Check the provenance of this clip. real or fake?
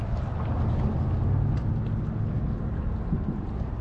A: real